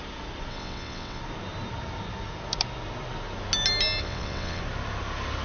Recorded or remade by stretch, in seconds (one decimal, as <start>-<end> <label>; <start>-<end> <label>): 0.0-0.5 recorded; 0.5-1.2 remade; 1.2-4.0 recorded; 4.0-4.6 remade; 4.6-5.4 recorded